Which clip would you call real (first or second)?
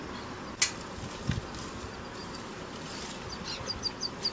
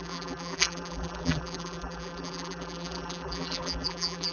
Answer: first